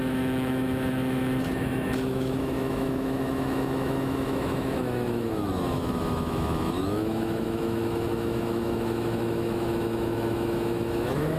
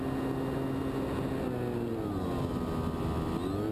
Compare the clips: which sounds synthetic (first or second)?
first